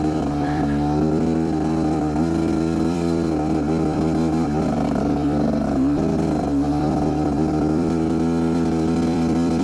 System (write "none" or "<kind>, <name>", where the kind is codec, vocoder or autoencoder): vocoder, BigVGAN v2